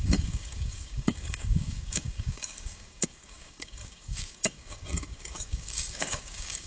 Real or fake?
fake